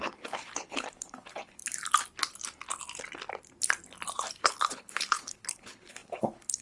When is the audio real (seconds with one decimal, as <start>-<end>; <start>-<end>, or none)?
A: 1.6-4.4